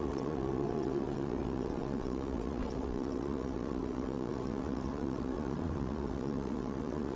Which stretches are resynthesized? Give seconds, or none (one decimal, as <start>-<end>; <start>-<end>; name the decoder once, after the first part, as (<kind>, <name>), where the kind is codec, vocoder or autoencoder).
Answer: 0.0-7.2 (vocoder, WaveNeXt)